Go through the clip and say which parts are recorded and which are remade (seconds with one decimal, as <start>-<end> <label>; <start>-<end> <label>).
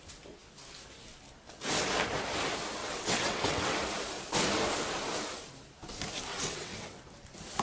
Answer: 0.0-2.8 recorded; 2.8-3.7 remade; 3.7-6.3 recorded; 6.3-7.0 remade; 7.0-7.6 recorded